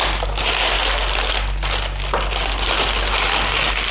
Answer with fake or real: real